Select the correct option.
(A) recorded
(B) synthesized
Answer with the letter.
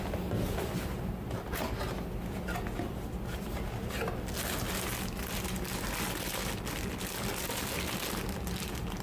A